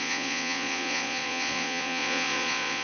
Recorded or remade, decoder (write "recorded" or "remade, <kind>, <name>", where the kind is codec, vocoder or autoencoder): remade, vocoder, Vocos